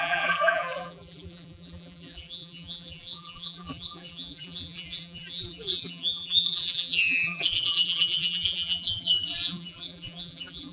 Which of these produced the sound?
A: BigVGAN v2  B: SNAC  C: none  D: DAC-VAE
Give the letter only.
A